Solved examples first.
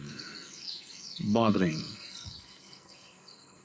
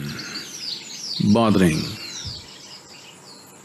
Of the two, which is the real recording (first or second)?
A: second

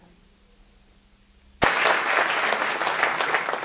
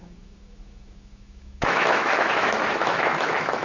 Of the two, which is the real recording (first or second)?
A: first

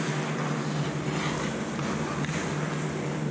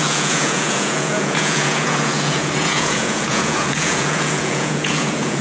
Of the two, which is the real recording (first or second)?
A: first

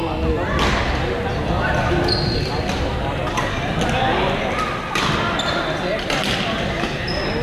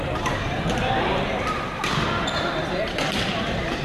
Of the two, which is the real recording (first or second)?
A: first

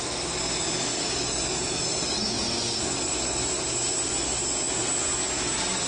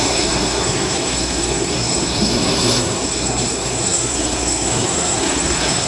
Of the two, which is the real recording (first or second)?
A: first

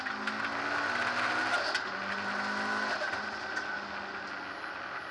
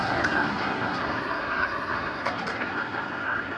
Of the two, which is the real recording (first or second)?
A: first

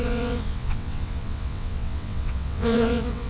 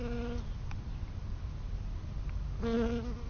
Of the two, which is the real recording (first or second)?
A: second